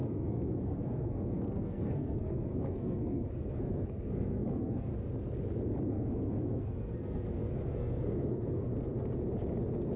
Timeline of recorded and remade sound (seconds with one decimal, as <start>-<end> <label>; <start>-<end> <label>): 0.0-4.9 remade; 4.9-5.9 recorded; 5.9-8.7 remade; 8.7-10.0 recorded